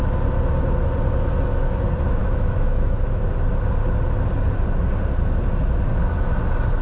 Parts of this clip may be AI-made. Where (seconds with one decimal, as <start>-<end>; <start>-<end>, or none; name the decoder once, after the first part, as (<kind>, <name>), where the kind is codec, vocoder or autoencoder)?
2.2-3.2 (autoencoder, DAC-VAE)